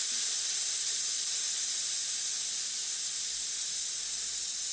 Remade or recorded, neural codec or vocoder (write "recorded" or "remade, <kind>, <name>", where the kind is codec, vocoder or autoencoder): recorded